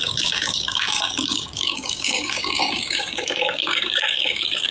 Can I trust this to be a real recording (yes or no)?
no